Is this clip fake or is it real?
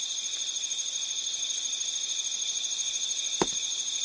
real